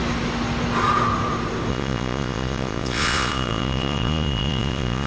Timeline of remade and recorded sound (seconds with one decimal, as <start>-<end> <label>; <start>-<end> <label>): 0.0-1.7 recorded; 1.7-5.1 remade